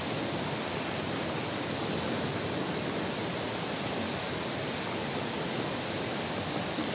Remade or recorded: remade